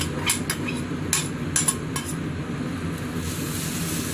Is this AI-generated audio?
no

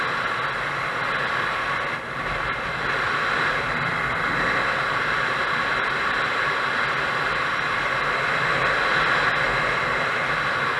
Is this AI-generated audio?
no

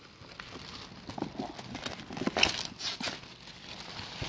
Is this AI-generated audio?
no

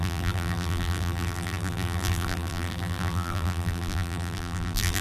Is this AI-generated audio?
yes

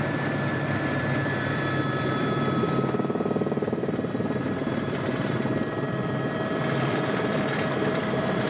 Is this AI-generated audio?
yes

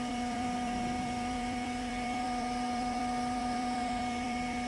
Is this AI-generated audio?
yes